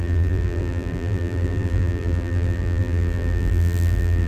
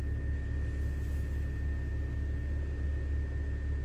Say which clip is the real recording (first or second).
second